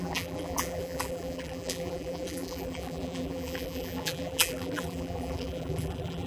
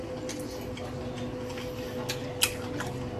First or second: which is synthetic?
first